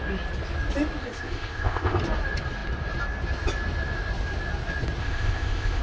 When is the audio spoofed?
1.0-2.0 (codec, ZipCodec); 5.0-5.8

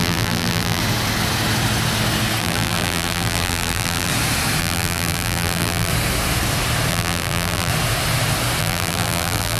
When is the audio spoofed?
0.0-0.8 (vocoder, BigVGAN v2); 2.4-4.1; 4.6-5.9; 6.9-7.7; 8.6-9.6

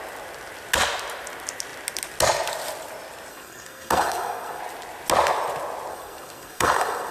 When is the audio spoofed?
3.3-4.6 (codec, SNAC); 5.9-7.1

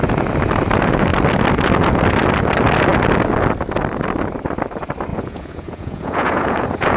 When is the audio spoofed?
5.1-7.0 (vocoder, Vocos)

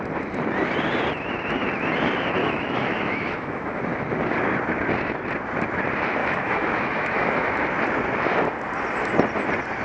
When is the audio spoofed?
2.4-3.8 (autoencoder, DAC-VAE); 6.2-7.5